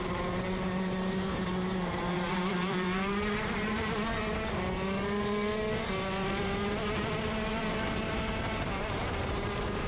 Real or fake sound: fake